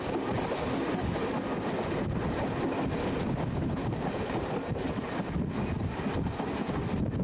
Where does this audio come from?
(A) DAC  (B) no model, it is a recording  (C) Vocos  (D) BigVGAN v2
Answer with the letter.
B